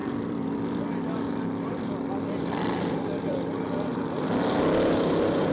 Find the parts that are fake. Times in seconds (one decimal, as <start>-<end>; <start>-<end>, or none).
0.0-3.3; 3.9-5.5